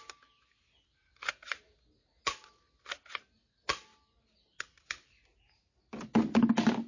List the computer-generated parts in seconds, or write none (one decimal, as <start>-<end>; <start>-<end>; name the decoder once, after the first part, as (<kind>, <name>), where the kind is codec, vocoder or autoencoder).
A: none